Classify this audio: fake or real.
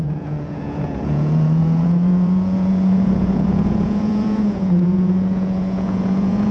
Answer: fake